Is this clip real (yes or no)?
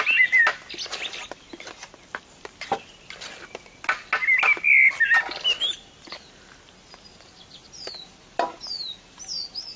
yes